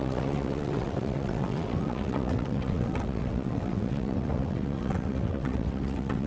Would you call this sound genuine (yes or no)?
no